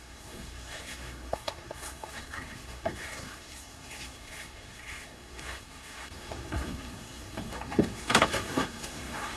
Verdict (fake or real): fake